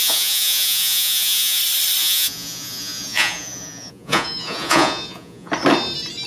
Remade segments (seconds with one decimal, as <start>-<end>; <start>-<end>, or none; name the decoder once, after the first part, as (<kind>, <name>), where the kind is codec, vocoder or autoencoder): 0.0-1.6 (vocoder, Vocos); 2.0-5.5